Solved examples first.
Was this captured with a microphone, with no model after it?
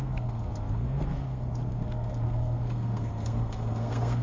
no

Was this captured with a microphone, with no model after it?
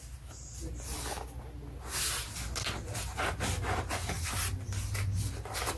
yes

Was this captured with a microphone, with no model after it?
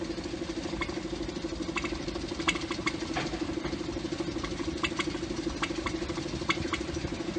yes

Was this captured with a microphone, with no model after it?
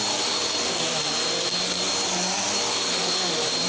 yes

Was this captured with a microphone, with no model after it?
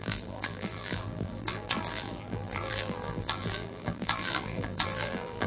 no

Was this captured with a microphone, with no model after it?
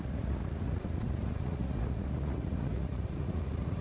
no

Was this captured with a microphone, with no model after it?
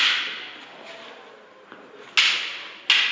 yes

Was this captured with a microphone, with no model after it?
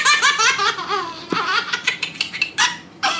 no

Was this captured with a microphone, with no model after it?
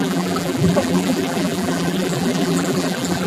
no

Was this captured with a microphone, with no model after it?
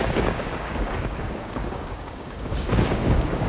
no